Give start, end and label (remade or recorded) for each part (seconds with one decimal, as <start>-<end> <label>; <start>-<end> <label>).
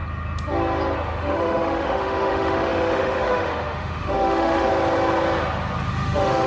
0.0-1.2 recorded; 1.2-4.7 remade; 4.7-5.9 recorded; 5.9-6.5 remade